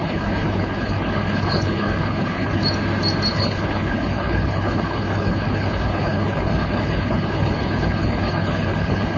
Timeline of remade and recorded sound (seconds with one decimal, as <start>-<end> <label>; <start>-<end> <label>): 0.0-2.6 remade; 2.6-3.3 recorded; 3.3-9.2 remade